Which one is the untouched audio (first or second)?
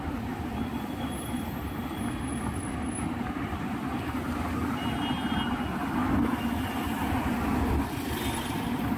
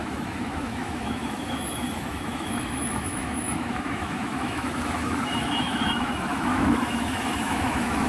first